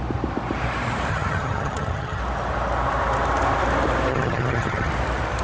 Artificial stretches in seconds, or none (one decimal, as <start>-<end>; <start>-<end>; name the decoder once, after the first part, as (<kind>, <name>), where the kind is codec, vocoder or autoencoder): 1.1-2.2 (vocoder, HiFi-GAN); 4.1-4.9